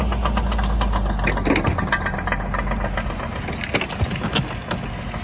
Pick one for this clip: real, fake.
real